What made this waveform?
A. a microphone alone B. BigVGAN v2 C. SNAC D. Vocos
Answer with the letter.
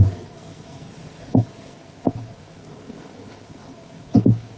C